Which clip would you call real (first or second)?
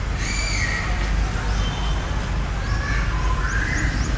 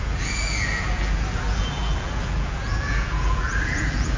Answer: first